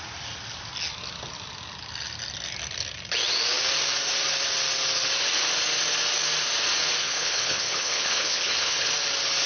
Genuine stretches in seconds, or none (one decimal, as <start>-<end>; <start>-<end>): 0.0-7.0; 8.9-9.5